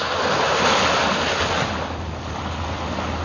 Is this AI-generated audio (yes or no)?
no